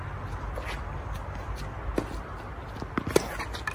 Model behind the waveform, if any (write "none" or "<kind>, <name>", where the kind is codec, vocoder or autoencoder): none